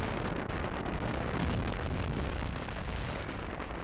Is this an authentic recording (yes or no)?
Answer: no